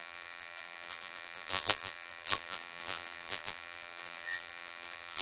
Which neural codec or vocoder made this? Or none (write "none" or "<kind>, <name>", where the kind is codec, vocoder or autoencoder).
vocoder, BigVGAN v2